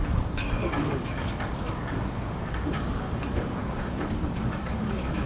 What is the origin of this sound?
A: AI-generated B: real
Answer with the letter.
A